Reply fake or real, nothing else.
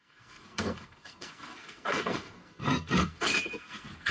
fake